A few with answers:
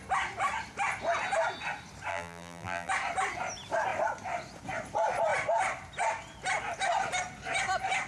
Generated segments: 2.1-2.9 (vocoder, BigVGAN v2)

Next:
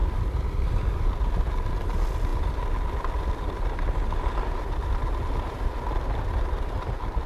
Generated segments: 0.0-1.0 (vocoder, BigVGAN v2)

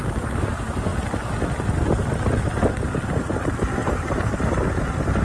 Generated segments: 3.8-4.8 (vocoder, BigVGAN v2)

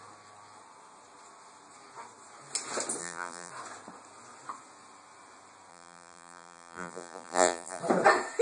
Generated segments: 3.0-3.5 (vocoder, BigVGAN v2); 5.7-7.8

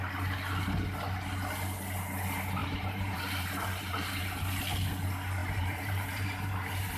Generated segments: 2.6-4.2 (vocoder, BigVGAN v2); 5.4-7.0